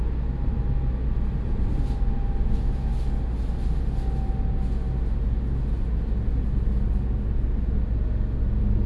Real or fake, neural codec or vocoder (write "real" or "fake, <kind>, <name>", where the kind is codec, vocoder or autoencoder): real